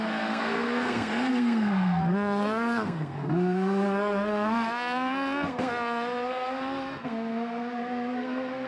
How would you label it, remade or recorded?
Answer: remade